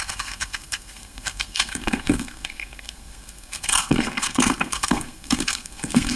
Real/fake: fake